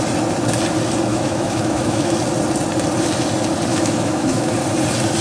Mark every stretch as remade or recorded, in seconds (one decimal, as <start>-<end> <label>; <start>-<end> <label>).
0.0-1.1 recorded; 1.1-2.1 remade; 2.1-3.7 recorded; 3.7-4.5 remade; 4.5-5.2 recorded